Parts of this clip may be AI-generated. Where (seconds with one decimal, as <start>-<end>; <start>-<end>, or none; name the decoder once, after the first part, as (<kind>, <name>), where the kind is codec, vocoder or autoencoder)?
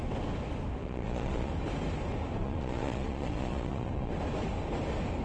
0.8-1.5 (vocoder, Vocos); 2.4-4.1